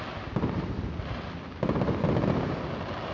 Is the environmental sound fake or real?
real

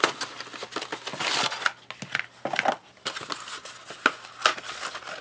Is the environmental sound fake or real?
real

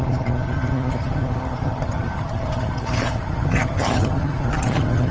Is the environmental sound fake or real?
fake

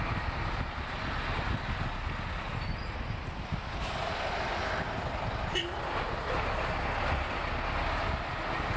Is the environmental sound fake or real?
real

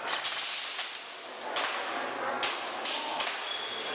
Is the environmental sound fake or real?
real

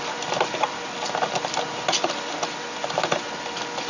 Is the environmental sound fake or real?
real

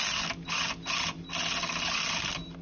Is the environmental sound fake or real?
real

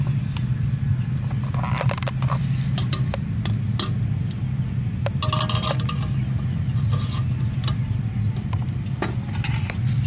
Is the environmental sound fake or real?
real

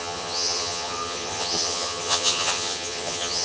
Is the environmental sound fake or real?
fake